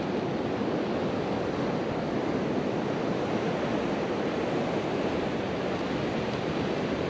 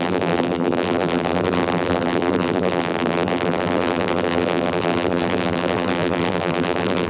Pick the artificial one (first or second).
second